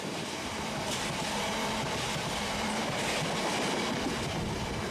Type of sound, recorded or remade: recorded